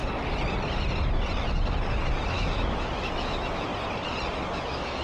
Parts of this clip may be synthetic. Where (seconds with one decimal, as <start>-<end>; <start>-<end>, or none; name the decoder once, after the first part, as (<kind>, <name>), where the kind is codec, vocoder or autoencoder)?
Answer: 2.3-3.7 (autoencoder, DAC-VAE); 4.5-5.0

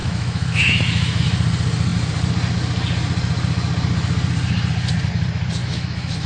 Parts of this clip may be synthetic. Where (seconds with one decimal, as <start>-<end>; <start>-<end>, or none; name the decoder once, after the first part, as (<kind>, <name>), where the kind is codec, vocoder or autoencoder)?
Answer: 0.0-1.2 (autoencoder, DAC-VAE); 5.6-6.3

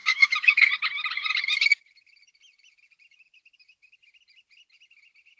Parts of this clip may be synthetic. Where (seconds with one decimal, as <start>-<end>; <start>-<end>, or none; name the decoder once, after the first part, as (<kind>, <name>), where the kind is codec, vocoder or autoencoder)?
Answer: 0.0-0.7 (autoencoder, DAC-VAE)